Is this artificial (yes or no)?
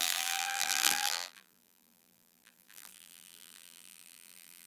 yes